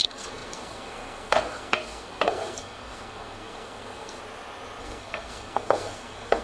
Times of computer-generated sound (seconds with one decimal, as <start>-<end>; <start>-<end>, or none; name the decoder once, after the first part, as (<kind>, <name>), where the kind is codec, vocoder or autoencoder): 0.0-4.2 (codec, SNAC); 4.8-6.4